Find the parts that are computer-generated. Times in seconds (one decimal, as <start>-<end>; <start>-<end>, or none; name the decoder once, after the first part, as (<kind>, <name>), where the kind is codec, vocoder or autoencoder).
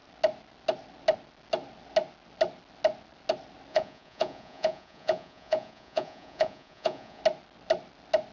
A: 3.7-7.2 (vocoder, Vocos)